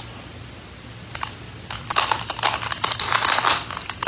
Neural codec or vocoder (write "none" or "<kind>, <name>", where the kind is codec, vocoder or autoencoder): none